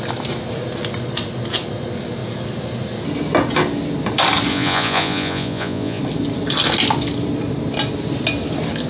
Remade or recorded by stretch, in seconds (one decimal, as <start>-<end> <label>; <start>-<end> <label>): 0.0-4.5 recorded; 4.5-6.0 remade; 6.0-8.9 recorded